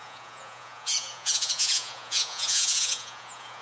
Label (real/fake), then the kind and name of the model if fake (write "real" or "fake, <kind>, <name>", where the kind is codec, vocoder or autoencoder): fake, vocoder, Vocos